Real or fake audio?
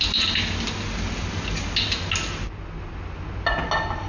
real